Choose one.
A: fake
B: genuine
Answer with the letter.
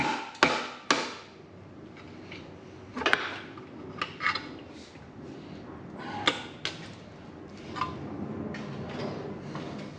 B